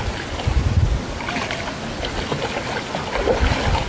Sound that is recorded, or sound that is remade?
recorded